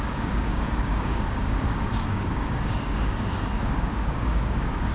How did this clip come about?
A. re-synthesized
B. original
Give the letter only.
A